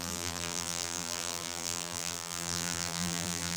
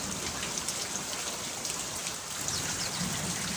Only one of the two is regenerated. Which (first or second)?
first